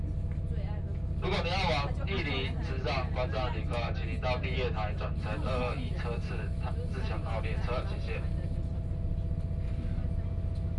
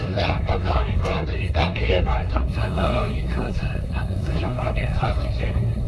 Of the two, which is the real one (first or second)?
first